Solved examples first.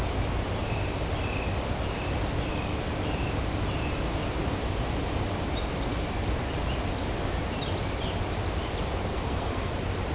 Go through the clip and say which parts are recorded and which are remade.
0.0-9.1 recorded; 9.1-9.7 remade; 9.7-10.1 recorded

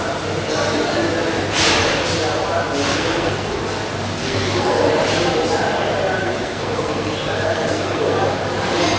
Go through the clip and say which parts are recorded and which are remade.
0.0-2.9 recorded; 2.9-3.6 remade; 3.6-4.2 recorded; 4.2-4.9 remade; 4.9-6.2 recorded; 6.2-8.4 remade; 8.4-9.0 recorded

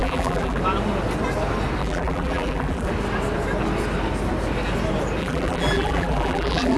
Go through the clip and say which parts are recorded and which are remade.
0.0-0.6 remade; 0.6-1.8 recorded; 1.8-2.9 remade; 2.9-5.2 recorded; 5.2-6.8 remade

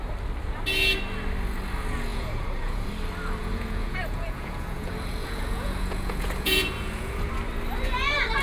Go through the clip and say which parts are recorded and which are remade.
0.0-2.1 recorded; 2.1-2.9 remade; 2.9-3.4 recorded; 3.4-7.3 remade; 7.3-8.4 recorded

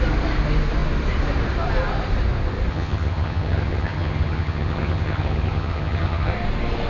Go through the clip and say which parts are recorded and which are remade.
0.0-2.7 recorded; 2.7-6.3 remade; 6.3-6.9 recorded